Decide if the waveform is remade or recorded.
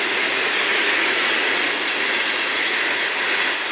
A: remade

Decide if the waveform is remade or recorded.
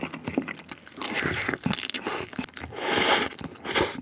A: recorded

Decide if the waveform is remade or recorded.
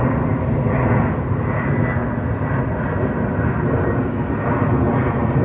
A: recorded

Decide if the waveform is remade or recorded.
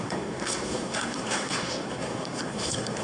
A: remade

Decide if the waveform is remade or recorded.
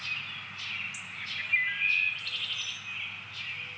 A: recorded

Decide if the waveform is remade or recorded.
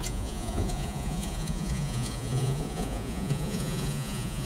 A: remade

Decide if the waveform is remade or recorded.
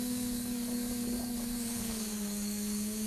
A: remade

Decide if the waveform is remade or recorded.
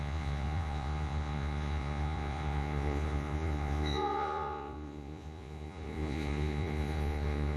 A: remade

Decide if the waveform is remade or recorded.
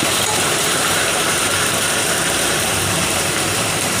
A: remade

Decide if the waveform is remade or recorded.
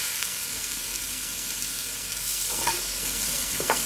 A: remade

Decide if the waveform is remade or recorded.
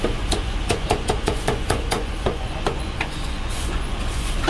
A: remade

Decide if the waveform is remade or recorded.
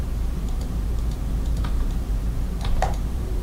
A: remade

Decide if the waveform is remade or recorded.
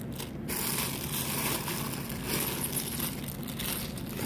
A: recorded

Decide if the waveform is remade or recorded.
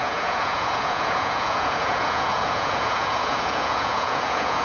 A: remade